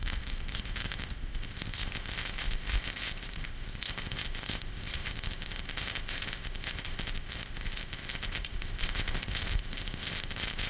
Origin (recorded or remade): remade